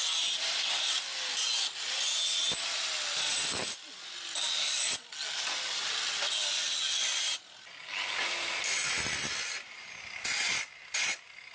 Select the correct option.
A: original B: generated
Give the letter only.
A